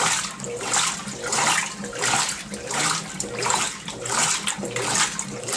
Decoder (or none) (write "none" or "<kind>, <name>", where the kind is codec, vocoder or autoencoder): none